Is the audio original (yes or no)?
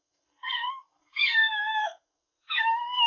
no